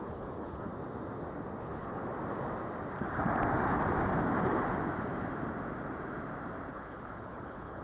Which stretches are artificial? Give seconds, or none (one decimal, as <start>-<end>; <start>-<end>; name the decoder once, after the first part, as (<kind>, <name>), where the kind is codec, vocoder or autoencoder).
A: 0.0-0.7 (codec, HILCodec); 1.6-2.0; 6.7-7.8